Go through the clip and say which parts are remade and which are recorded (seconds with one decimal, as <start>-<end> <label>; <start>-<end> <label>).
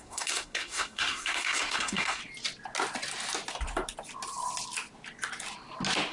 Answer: 0.0-2.2 remade; 2.2-6.1 recorded